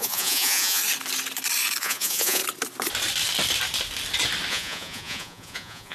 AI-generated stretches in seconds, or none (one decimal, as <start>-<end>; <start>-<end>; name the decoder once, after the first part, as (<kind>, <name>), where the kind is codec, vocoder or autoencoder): 0.0-0.8 (vocoder, Vocos); 1.8-2.4; 4.5-5.9